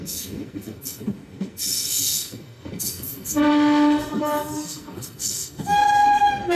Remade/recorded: remade